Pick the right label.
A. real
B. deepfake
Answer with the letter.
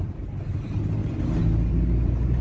A